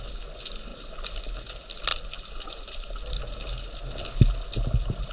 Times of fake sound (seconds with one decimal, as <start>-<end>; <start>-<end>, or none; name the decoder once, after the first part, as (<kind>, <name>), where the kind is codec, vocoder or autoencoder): 0.7-1.2 (vocoder, BigVGAN v2); 1.9-3.4